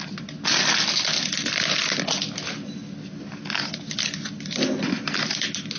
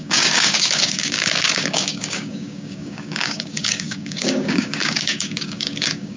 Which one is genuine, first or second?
first